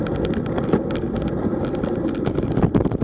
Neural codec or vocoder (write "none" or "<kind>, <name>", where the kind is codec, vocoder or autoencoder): none